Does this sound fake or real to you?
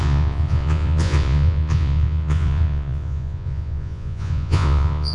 fake